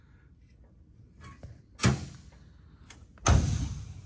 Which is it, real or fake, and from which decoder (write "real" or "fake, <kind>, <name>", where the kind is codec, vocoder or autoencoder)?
real